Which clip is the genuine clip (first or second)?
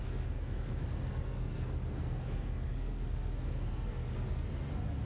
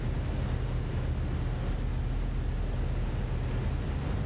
second